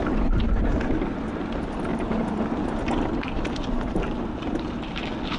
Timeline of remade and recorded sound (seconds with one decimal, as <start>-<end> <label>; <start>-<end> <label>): 0.0-0.9 remade; 0.9-1.9 recorded; 1.9-5.0 remade; 5.0-5.4 recorded